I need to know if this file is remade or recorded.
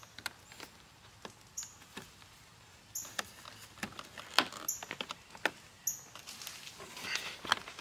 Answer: recorded